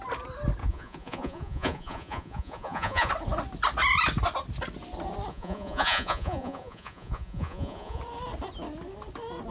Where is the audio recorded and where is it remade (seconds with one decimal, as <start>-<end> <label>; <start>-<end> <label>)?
0.0-0.6 recorded; 0.6-3.1 remade; 3.1-5.3 recorded; 5.3-8.0 remade; 8.0-9.5 recorded